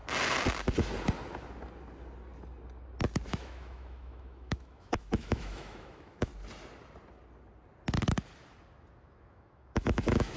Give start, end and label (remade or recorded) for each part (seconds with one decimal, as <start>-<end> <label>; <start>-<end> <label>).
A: 0.0-3.3 recorded; 3.3-6.3 remade; 6.3-9.0 recorded; 9.0-10.4 remade